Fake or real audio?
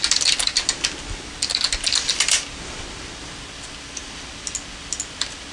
real